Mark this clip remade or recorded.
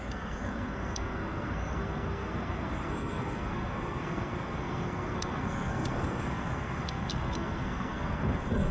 remade